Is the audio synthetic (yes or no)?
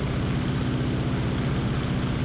no